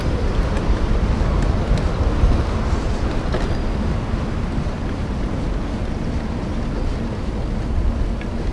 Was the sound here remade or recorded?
recorded